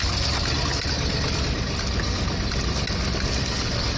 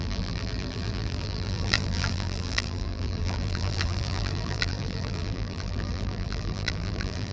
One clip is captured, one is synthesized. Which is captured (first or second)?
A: first